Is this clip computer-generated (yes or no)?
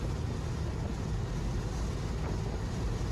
no